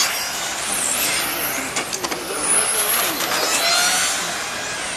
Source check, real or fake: real